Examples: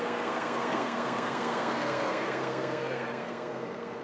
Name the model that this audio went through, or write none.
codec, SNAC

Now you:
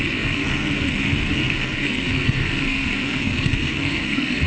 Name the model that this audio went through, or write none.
codec, SNAC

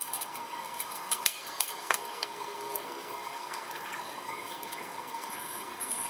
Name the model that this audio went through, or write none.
codec, SNAC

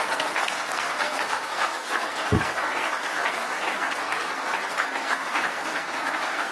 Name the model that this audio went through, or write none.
codec, SNAC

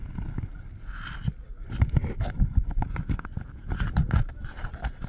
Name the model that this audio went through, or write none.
none